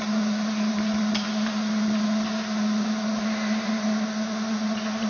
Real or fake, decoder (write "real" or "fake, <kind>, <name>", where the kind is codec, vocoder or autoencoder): real